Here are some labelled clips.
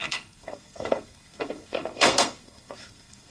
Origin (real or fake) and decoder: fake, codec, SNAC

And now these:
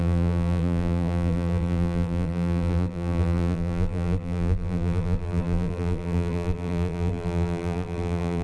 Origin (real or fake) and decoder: fake, vocoder, BigVGAN v2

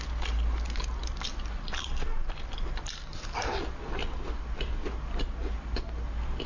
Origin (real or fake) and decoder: real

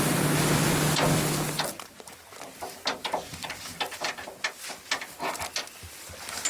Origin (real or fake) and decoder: real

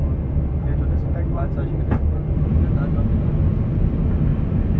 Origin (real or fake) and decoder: real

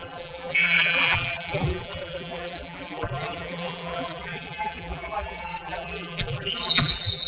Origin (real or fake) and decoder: fake, vocoder, BigVGAN v2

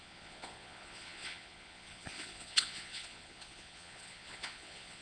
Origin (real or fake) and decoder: fake, vocoder, Vocos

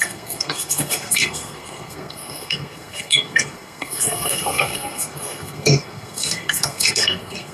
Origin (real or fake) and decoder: fake, codec, SNAC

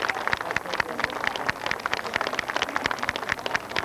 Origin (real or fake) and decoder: real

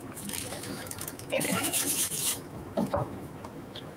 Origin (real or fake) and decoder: fake, autoencoder, DAC-VAE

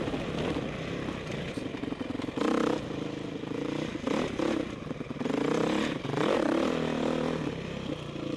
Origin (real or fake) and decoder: real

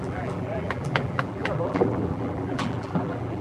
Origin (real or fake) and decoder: fake, vocoder, BigVGAN v2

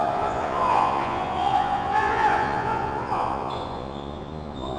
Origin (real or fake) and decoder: fake, vocoder, Vocos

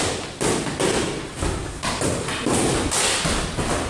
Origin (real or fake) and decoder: real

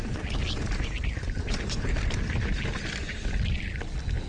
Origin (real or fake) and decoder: real